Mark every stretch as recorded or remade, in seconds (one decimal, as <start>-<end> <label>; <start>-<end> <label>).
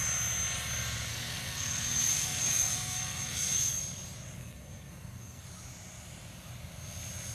0.0-1.1 recorded; 1.1-3.8 remade; 3.8-4.4 recorded; 4.4-5.4 remade; 5.4-7.3 recorded